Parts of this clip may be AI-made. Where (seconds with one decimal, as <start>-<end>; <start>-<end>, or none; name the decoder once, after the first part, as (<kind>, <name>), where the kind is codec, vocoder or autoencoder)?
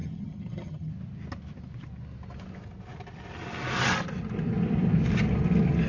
0.0-0.9 (vocoder, HiFi-GAN)